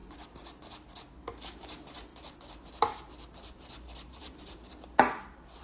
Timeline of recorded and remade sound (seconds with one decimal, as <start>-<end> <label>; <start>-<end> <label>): 0.0-4.2 recorded; 4.2-4.7 remade; 4.7-5.6 recorded